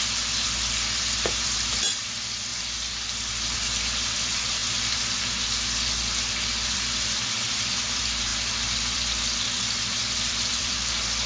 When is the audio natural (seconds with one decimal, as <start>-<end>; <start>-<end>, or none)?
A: 2.5-4.1; 4.6-6.7